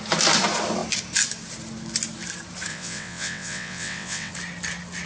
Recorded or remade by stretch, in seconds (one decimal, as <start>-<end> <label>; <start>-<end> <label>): 0.0-2.7 recorded; 2.7-4.3 remade; 4.3-5.1 recorded